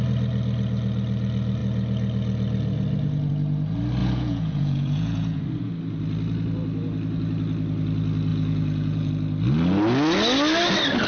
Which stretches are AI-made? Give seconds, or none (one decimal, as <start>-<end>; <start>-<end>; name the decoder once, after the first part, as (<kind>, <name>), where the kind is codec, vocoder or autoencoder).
4.0-5.4 (vocoder, Vocos); 8.3-9.1